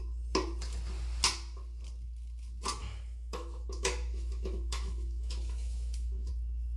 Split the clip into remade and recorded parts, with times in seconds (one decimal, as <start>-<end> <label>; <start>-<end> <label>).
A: 0.0-2.8 recorded; 2.8-6.3 remade; 6.3-6.8 recorded